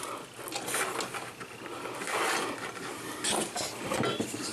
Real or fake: real